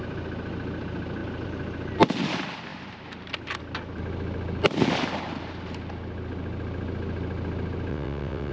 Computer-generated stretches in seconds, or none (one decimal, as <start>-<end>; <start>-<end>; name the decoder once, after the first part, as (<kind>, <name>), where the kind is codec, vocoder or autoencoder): 7.9-8.5 (vocoder, WaveNeXt)